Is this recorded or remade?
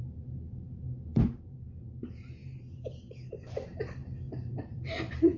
remade